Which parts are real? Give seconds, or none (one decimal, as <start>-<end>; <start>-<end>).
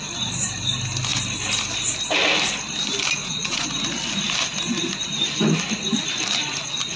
0.0-3.2; 3.7-7.0